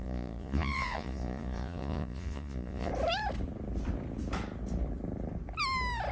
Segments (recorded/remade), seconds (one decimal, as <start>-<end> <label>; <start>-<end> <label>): 0.0-2.9 remade; 2.9-6.1 recorded